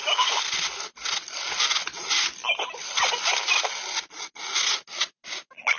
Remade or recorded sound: recorded